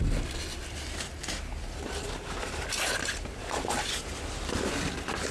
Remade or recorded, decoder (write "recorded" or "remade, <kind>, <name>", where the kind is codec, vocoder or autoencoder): recorded